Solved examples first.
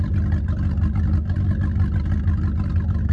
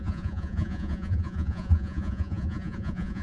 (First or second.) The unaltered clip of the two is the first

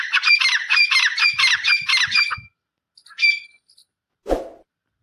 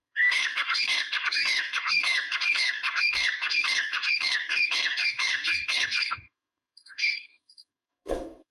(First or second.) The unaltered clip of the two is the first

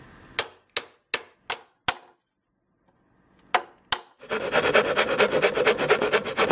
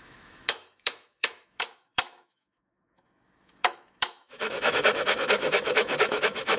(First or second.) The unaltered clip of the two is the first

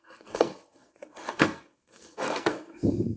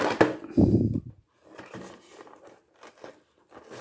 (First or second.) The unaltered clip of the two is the second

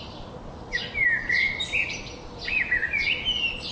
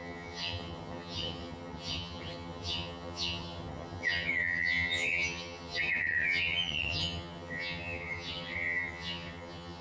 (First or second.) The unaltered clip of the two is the first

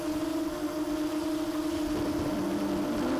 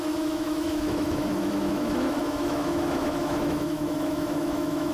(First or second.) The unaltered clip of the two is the first